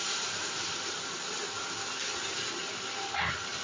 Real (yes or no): yes